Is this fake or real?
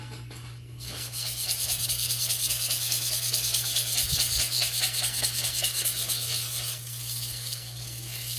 fake